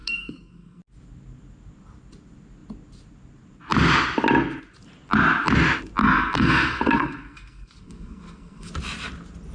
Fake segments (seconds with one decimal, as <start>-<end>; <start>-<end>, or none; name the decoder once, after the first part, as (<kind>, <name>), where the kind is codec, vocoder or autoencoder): 0.0-0.8 (codec, SNAC); 6.0-8.7

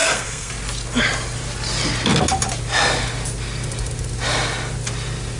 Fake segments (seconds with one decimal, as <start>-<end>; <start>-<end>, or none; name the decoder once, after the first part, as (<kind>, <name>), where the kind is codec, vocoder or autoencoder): 0.0-0.5 (codec, SNAC)

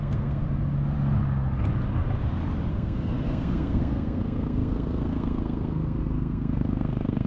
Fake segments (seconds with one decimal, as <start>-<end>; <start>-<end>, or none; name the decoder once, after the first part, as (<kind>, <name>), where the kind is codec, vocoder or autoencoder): 0.0-0.4 (codec, SNAC); 2.7-7.3

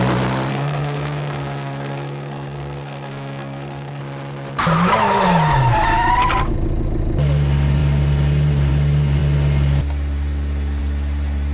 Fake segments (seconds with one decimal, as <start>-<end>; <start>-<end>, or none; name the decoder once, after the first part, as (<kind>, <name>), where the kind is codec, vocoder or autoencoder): 0.5-4.0 (codec, SNAC)

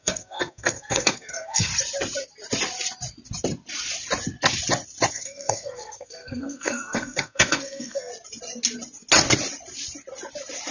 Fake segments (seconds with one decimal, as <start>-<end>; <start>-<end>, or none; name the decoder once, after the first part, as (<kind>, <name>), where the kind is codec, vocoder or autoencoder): 0.0-1.7 (codec, SNAC); 5.1-8.1